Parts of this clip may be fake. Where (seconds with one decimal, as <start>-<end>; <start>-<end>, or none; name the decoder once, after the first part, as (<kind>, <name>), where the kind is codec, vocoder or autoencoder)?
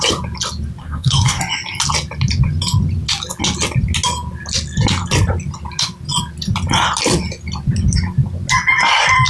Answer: 0.8-1.4 (codec, SNAC)